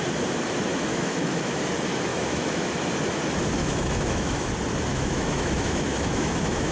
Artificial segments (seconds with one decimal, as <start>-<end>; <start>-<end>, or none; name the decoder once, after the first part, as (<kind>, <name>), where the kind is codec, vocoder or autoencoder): 0.7-1.7 (autoencoder, DAC-VAE); 2.1-2.7; 3.6-4.5; 4.9-6.7